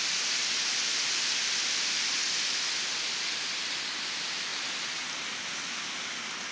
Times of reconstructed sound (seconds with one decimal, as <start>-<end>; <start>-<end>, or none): none